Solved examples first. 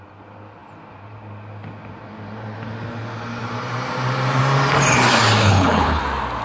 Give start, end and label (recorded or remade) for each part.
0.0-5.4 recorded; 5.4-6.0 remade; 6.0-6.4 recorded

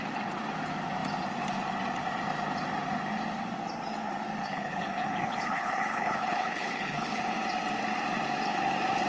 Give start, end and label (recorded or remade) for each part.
0.0-4.4 recorded; 4.4-7.2 remade; 7.2-9.1 recorded

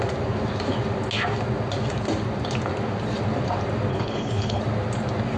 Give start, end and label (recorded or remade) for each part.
0.0-3.9 recorded; 3.9-4.6 remade; 4.6-5.4 recorded

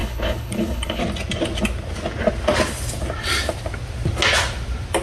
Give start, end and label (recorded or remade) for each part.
0.0-1.0 remade; 1.0-5.0 recorded

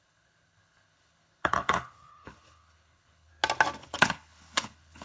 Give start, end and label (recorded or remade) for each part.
0.0-3.3 remade; 3.3-3.8 recorded; 3.8-5.0 remade